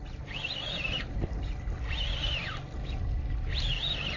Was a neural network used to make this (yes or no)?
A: no